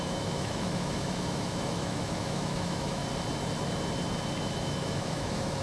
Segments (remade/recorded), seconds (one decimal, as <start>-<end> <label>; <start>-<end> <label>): 0.0-3.0 remade; 3.0-4.4 recorded; 4.4-5.6 remade